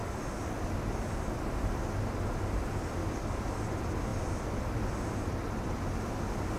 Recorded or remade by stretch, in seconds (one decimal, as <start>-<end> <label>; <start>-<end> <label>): 0.0-3.0 recorded; 3.0-3.5 remade; 3.5-6.6 recorded